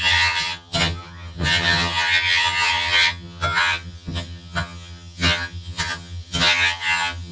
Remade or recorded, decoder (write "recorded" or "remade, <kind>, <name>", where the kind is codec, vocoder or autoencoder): remade, vocoder, HiFi-GAN